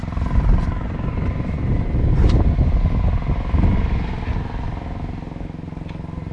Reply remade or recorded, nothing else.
recorded